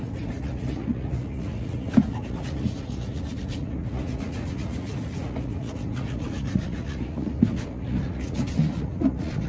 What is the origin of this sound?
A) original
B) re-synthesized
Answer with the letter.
B